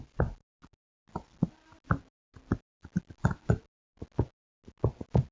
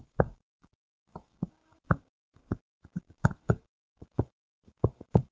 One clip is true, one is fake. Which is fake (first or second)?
second